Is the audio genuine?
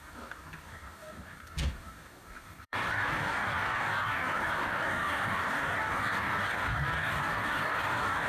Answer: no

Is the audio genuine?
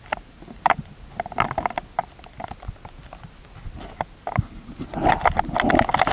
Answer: yes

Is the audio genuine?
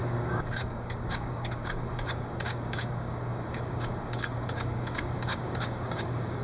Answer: no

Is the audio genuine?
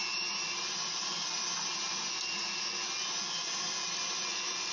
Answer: yes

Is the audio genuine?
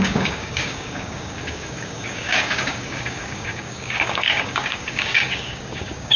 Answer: no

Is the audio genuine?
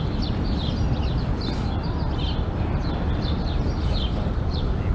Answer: yes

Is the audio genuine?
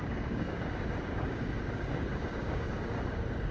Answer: no